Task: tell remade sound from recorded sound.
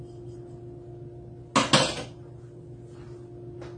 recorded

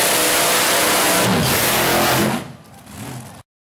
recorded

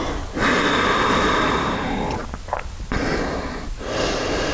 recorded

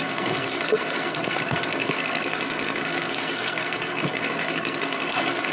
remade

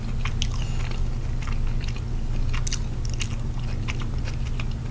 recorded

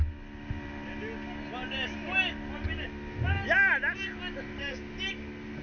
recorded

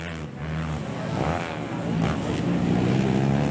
recorded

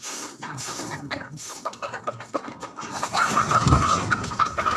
remade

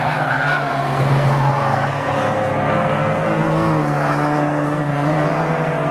remade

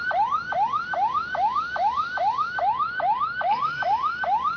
recorded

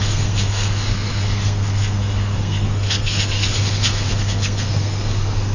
remade